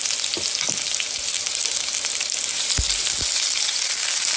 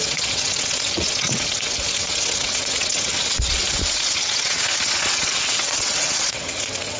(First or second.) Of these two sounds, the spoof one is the second